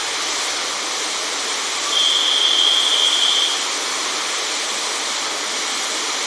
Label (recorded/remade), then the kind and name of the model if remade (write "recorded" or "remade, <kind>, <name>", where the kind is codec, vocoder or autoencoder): recorded